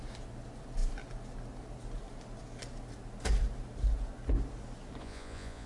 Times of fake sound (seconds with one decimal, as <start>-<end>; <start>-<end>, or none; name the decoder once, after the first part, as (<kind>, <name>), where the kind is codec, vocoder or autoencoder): 5.0-5.7 (vocoder, Vocos)